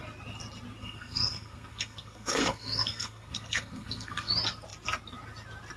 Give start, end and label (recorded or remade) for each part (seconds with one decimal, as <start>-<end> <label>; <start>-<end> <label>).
0.0-0.8 recorded; 0.8-4.3 remade; 4.3-5.8 recorded

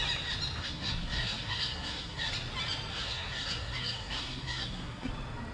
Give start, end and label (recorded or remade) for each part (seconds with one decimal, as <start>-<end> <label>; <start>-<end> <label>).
0.0-0.6 recorded; 0.6-2.3 remade; 2.3-2.9 recorded; 2.9-5.1 remade; 5.1-5.5 recorded

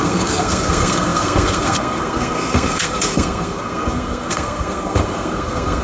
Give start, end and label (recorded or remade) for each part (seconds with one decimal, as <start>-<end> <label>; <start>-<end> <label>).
0.0-5.8 remade

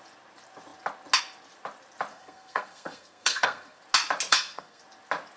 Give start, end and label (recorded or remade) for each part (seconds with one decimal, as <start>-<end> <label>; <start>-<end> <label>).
0.0-2.1 recorded; 2.1-3.8 remade; 3.8-4.3 recorded; 4.3-4.8 remade; 4.8-5.4 recorded

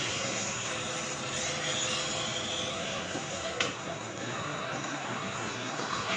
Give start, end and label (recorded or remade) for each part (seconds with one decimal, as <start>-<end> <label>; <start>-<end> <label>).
0.0-0.7 remade; 0.7-2.7 recorded; 2.7-6.2 remade

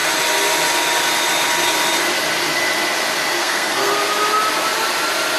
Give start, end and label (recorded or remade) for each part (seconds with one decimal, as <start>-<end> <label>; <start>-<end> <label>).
0.0-3.4 recorded; 3.4-4.0 remade; 4.0-5.4 recorded